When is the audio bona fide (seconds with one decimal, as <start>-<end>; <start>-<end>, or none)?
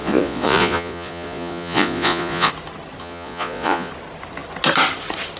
2.5-3.0; 3.9-5.4